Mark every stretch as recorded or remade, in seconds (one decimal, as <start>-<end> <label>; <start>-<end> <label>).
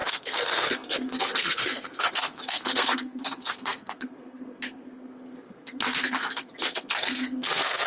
0.0-7.9 remade